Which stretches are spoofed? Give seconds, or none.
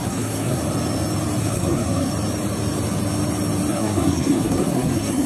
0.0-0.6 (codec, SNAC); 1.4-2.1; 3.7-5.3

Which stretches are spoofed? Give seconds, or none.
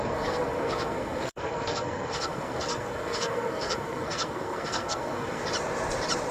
0.0-5.4 (codec, SNAC)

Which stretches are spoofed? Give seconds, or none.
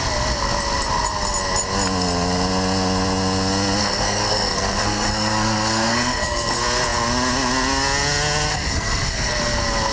3.8-6.5 (codec, SNAC); 8.5-9.4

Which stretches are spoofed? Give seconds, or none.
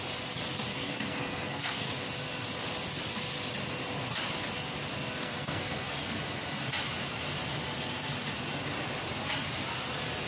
0.7-1.9 (codec, SNAC); 5.2-6.2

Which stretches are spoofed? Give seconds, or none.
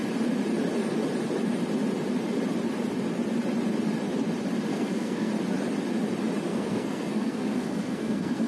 4.7-5.3 (codec, SNAC); 6.5-8.5